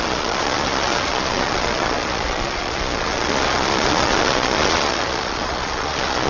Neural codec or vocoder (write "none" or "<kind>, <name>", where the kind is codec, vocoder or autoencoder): vocoder, Vocos